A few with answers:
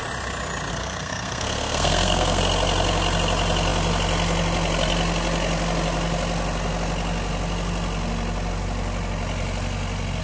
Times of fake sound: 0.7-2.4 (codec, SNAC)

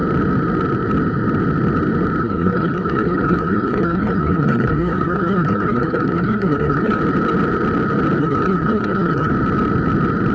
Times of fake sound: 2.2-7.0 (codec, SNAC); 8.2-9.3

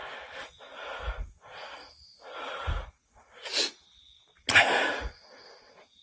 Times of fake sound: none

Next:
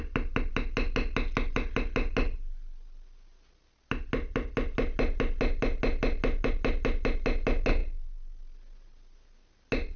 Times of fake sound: none